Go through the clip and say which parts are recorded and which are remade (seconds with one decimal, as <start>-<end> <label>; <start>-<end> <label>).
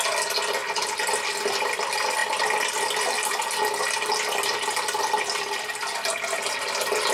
0.0-7.1 recorded